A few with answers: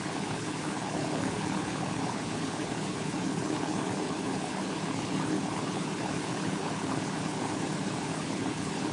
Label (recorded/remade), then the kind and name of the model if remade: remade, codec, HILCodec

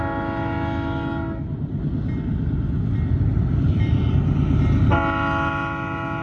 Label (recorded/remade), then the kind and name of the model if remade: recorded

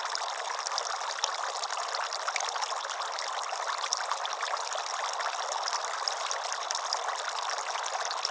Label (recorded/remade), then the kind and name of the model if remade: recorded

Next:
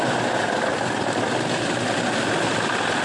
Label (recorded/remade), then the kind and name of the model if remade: recorded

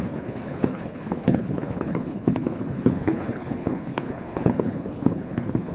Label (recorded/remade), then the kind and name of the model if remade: remade, codec, HILCodec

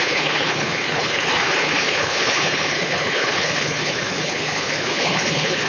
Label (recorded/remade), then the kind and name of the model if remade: remade, codec, HILCodec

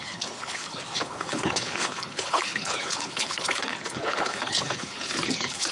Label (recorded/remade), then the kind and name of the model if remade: remade, codec, HILCodec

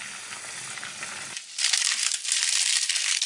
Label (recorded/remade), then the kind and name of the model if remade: recorded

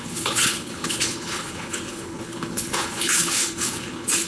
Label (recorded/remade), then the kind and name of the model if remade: remade, codec, HILCodec